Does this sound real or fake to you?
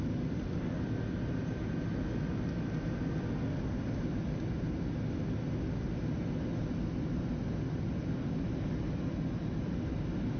real